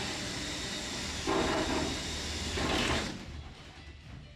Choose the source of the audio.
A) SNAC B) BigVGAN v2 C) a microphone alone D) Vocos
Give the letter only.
C